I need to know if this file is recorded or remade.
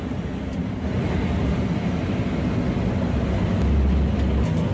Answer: recorded